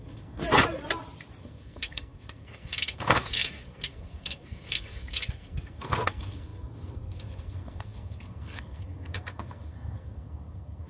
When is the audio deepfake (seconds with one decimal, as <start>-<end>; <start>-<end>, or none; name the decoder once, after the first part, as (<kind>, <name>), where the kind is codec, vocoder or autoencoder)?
0.0-0.4 (codec, SNAC); 1.4-10.9